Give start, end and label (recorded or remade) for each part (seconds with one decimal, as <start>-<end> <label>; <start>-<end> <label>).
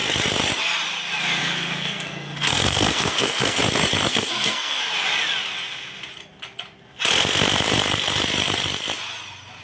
0.0-1.4 recorded; 1.4-3.6 remade; 3.6-4.1 recorded; 4.1-4.8 remade; 4.8-9.6 recorded